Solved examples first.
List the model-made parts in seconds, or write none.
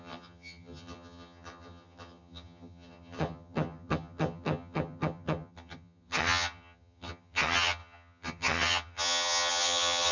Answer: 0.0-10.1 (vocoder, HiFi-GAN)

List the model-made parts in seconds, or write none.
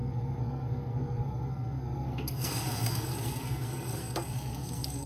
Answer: 0.0-5.1 (codec, SNAC)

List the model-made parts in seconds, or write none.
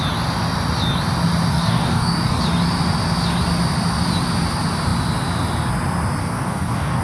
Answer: 1.5-2.4 (codec, DAC); 6.2-7.0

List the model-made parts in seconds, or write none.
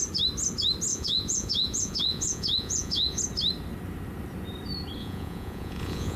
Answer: 0.9-3.2 (vocoder, Vocos); 5.0-6.2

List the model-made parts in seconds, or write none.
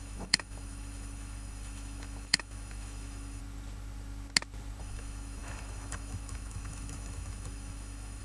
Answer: 0.0-3.4 (autoencoder, DAC-VAE); 4.8-8.2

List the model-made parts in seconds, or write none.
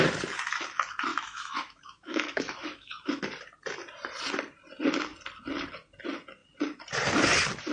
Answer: 1.1-3.2 (autoencoder, DAC-VAE)